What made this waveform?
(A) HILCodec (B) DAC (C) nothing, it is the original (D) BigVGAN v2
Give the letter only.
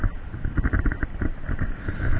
C